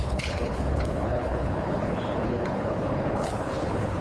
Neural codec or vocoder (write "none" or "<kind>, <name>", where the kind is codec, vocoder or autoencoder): codec, HILCodec